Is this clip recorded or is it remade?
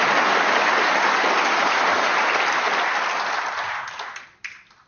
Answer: recorded